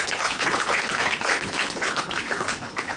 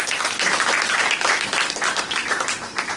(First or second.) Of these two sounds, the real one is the second